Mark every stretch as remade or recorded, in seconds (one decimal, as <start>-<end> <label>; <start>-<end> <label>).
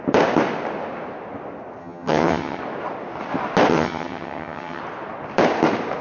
0.0-1.8 recorded; 1.8-2.6 remade; 2.6-3.7 recorded; 3.7-4.8 remade; 4.8-6.0 recorded